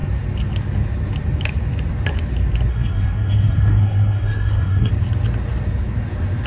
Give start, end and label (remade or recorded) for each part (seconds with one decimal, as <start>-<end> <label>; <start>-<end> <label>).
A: 0.0-2.7 recorded; 2.7-4.9 remade; 4.9-6.5 recorded